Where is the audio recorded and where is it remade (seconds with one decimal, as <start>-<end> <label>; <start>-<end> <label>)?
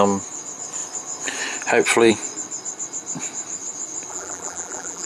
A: 0.0-4.1 recorded; 4.1-5.1 remade